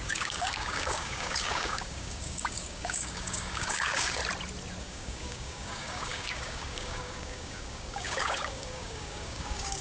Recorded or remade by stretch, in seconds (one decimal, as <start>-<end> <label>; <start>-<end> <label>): 0.0-4.2 remade; 4.2-4.8 recorded; 4.8-9.8 remade